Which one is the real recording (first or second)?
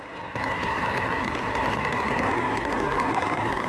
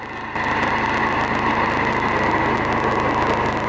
second